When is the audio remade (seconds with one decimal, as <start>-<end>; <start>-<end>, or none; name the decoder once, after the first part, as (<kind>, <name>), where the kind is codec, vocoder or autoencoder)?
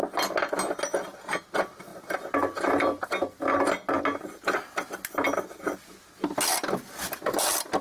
none